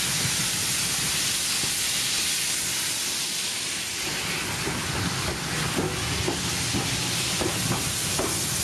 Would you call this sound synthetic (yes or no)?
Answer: no